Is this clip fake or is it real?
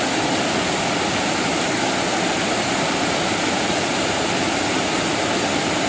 real